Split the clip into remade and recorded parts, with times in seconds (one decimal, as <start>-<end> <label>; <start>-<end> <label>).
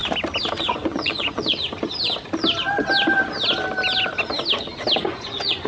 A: 0.0-0.6 recorded; 0.6-1.6 remade; 1.6-5.0 recorded; 5.0-5.7 remade